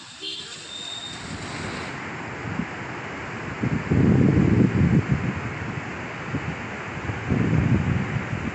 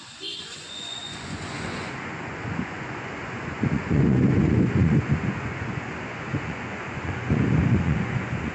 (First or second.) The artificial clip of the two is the second